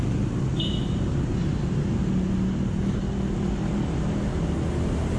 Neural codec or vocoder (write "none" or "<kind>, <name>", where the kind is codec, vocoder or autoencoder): none